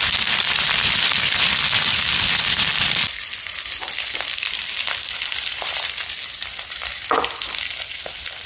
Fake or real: fake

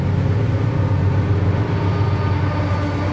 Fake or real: real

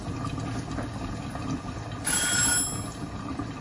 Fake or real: real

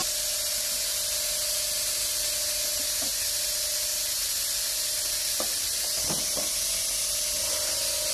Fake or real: real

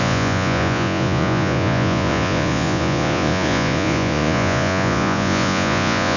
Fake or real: fake